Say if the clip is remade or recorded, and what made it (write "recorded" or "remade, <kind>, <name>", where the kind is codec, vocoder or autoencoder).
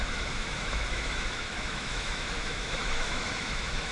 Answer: remade, autoencoder, DAC-VAE